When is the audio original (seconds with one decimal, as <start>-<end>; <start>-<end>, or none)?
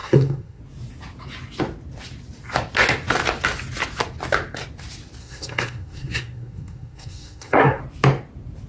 0.6-5.2; 7.8-8.7